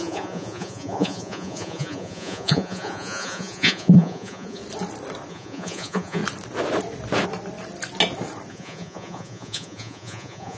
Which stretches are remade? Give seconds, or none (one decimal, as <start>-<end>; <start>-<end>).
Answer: 0.0-4.6; 5.3-6.2; 8.5-10.6